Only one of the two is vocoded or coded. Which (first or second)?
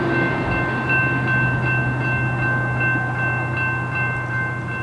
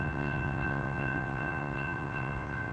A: second